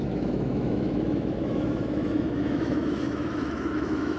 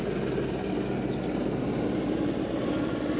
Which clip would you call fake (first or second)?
first